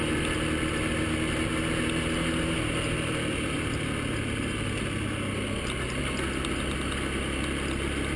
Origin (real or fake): real